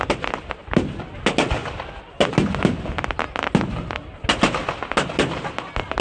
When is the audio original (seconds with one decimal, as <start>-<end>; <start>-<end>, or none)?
0.0-6.0